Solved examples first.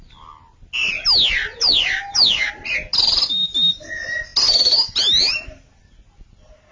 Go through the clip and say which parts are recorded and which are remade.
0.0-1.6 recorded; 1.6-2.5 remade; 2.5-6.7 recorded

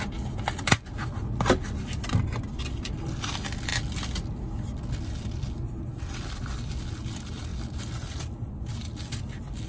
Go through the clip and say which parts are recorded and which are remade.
0.0-9.7 recorded

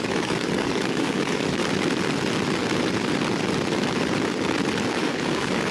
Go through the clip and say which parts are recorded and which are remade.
0.0-1.6 remade; 1.6-5.0 recorded; 5.0-5.7 remade